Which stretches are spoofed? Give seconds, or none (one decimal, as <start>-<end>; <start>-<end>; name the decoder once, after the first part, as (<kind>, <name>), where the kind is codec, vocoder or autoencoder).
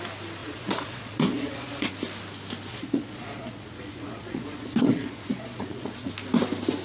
0.4-1.9 (vocoder, Vocos); 2.7-6.1